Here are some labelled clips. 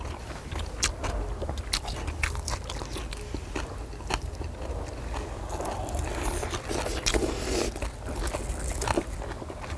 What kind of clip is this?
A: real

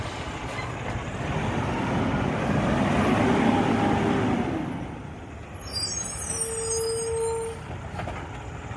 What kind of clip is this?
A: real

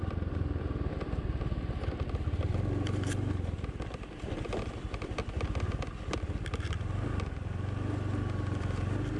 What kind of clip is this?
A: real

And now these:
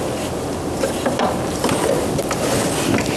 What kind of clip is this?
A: real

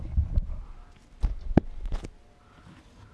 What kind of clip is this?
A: real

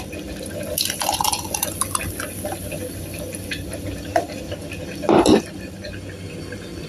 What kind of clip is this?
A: real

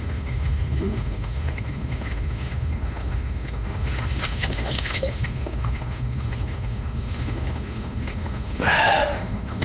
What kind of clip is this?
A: fake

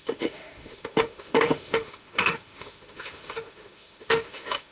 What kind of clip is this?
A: fake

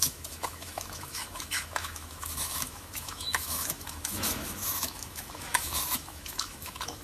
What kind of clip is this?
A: fake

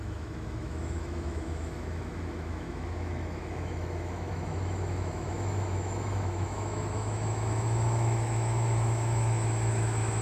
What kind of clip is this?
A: fake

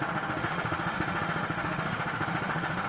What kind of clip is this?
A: fake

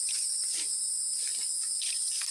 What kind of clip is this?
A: real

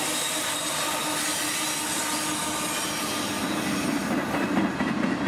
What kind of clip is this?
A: real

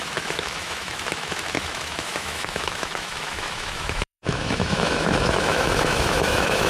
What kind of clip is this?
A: fake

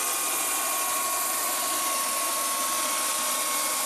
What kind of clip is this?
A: real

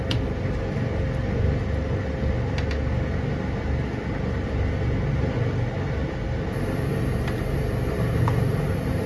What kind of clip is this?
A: real